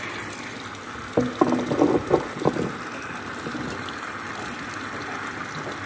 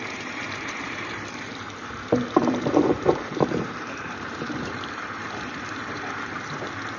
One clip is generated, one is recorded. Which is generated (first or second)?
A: second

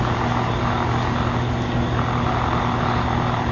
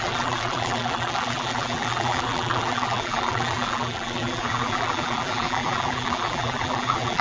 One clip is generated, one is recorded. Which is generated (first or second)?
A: second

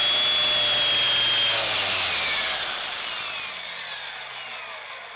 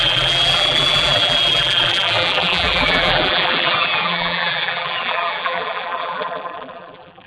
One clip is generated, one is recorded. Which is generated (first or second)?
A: second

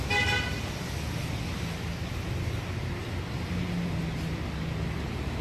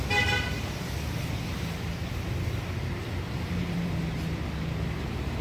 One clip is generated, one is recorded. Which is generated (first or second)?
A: second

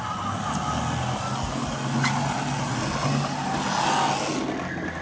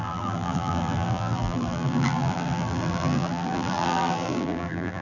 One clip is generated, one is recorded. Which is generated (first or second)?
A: second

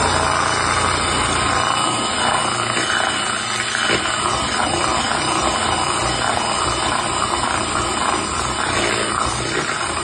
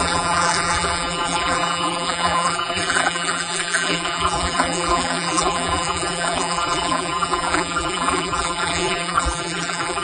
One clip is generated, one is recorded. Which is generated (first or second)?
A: second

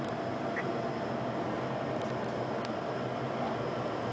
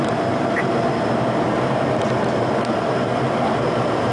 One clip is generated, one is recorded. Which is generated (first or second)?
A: second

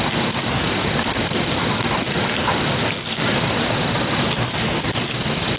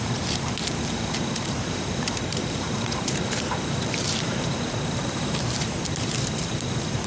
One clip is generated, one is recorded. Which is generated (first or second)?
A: second